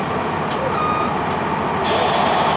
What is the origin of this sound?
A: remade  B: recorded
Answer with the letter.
B